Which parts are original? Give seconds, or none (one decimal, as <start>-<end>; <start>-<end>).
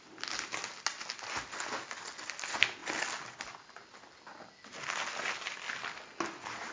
0.0-6.7